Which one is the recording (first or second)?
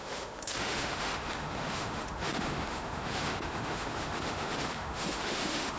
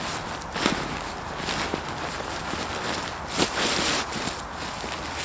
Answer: second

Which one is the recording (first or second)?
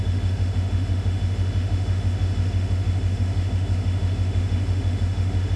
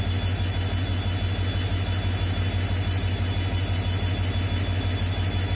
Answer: second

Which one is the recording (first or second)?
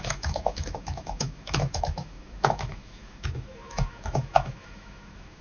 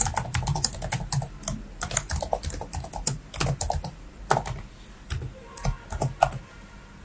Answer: second